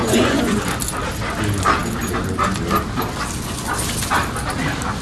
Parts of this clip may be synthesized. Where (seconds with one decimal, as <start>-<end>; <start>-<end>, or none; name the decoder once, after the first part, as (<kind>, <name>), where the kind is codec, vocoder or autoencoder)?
0.0-0.6 (vocoder, Vocos)